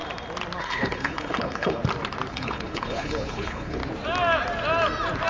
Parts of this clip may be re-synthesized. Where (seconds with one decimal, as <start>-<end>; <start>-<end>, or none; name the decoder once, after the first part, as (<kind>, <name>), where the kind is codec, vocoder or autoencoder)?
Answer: 0.6-1.8 (codec, HILCodec); 2.3-3.8